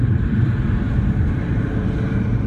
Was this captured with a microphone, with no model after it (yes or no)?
no